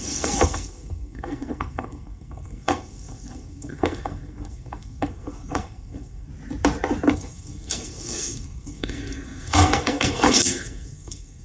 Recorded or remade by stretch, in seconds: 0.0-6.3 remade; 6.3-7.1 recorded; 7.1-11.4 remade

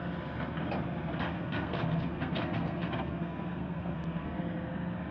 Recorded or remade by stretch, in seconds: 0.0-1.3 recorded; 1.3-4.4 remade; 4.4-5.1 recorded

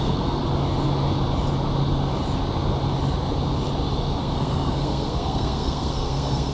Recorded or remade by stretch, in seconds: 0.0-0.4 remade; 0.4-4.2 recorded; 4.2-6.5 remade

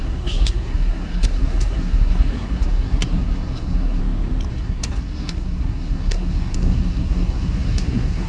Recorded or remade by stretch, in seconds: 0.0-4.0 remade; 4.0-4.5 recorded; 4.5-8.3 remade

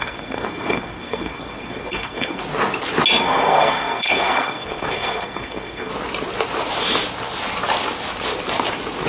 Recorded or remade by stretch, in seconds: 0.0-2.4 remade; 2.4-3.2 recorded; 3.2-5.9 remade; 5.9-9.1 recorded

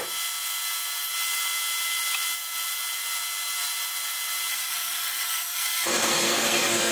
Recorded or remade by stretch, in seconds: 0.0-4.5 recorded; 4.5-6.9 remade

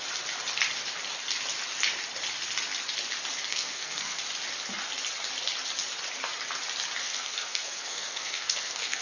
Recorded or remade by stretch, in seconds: 0.0-3.5 recorded; 3.5-4.2 remade; 4.2-7.0 recorded; 7.0-9.0 remade